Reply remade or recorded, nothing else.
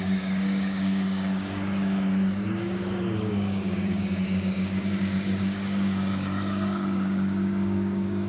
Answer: remade